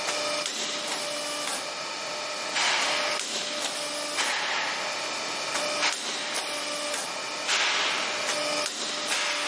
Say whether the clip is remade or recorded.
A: recorded